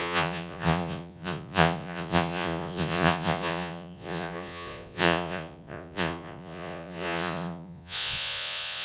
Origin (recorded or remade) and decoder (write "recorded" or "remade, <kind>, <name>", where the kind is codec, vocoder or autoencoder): remade, vocoder, Vocos